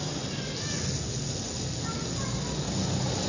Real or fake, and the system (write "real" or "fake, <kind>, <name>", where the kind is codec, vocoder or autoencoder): real